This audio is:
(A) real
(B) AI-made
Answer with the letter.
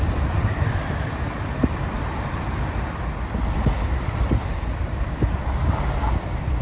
B